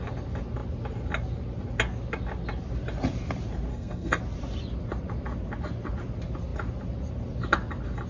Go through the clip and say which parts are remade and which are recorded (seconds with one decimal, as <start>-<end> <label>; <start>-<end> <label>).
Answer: 0.0-3.7 recorded; 3.7-4.2 remade; 4.2-8.1 recorded